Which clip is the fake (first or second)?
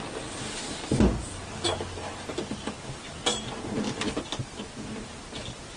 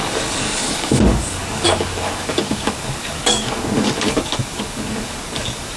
second